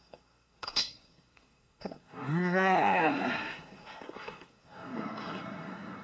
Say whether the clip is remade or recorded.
remade